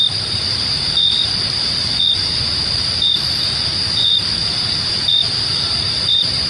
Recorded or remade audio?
remade